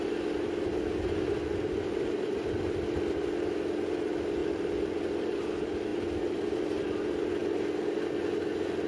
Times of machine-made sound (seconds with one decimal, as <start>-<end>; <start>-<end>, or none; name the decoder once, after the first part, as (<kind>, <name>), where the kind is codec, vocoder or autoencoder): 4.4-5.4 (vocoder, BigVGAN v2)